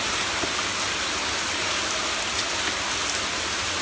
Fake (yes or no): no